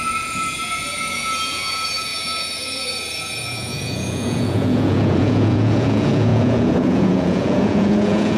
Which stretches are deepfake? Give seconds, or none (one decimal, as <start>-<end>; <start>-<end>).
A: 0.0-8.4

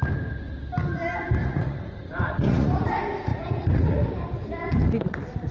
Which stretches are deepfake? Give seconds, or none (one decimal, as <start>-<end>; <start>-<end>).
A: 1.4-2.9; 3.3-4.1

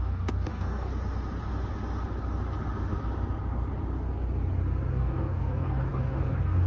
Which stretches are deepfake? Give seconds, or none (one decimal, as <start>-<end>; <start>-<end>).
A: 0.0-0.9; 4.9-6.7